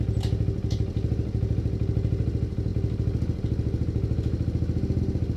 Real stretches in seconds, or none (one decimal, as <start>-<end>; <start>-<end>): 0.0-5.4